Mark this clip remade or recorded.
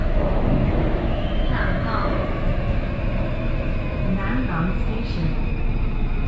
remade